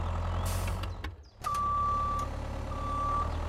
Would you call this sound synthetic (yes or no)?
no